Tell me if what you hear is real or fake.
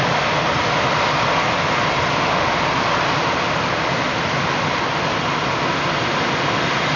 real